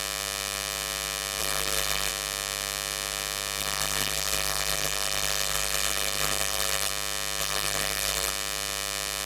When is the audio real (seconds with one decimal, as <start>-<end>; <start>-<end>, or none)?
0.0-1.4; 2.1-3.6; 6.9-7.4; 8.3-9.3